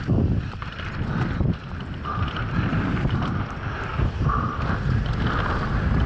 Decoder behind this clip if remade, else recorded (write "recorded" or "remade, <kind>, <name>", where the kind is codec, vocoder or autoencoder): recorded